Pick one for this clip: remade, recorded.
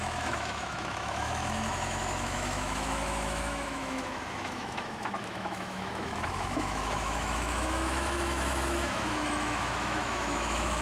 remade